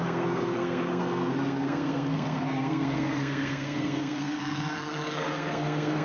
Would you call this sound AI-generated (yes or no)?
yes